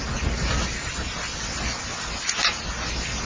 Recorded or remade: recorded